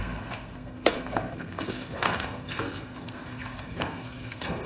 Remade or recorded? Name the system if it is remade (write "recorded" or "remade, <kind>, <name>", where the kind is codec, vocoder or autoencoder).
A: remade, codec, SNAC